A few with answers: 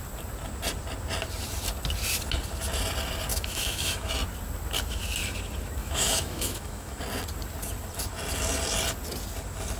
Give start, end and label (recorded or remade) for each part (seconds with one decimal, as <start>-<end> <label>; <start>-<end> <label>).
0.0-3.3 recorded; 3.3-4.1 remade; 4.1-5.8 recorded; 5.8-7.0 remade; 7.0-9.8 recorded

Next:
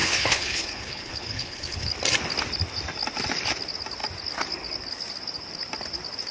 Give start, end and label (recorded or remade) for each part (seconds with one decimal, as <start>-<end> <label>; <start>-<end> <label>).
0.0-1.9 remade; 1.9-6.3 recorded

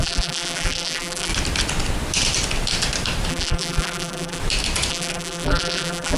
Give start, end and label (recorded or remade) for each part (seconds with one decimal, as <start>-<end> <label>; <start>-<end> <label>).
0.0-1.3 remade; 1.3-3.3 recorded; 3.3-4.4 remade; 4.4-4.9 recorded; 4.9-6.2 remade

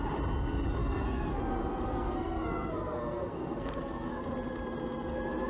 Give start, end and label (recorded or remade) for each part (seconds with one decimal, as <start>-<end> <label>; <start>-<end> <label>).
0.0-0.8 recorded; 0.8-1.4 remade; 1.4-1.9 recorded; 1.9-4.2 remade; 4.2-5.5 recorded

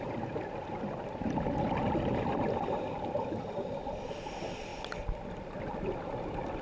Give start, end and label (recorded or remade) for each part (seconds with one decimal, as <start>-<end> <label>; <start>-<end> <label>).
0.0-4.7 remade; 4.7-5.6 recorded; 5.6-6.6 remade